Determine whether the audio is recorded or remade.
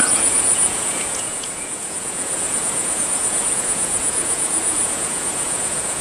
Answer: remade